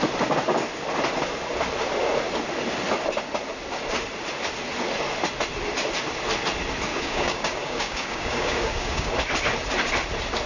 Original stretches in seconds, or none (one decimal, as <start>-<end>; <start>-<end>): 0.0-6.9; 9.1-10.5